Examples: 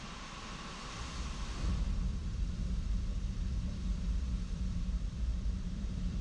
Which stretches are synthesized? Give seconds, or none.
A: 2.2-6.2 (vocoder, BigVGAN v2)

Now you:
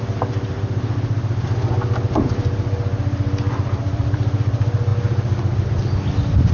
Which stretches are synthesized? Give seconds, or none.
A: 0.0-2.4 (vocoder, BigVGAN v2); 3.5-4.9

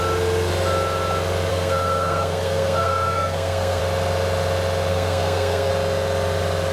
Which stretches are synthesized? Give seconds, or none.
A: 1.5-3.8 (codec, SNAC); 4.9-5.7

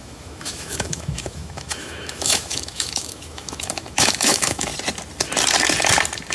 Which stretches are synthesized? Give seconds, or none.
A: 0.0-4.7 (autoencoder, DAC-VAE)

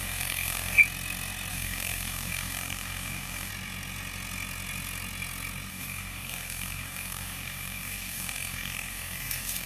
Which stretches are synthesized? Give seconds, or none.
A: 0.0-0.8 (codec, DAC); 1.5-3.5; 5.7-9.7